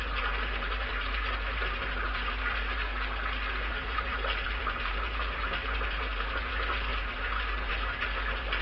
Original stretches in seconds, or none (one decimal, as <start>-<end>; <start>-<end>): 2.9-3.7